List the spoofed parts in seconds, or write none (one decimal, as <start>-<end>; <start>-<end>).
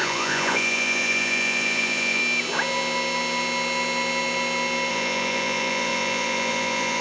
0.0-2.2; 4.9-7.0